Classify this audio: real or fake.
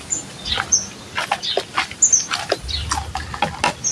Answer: real